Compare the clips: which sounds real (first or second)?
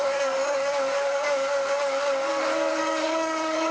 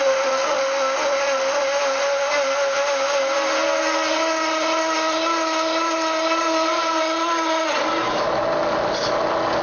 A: second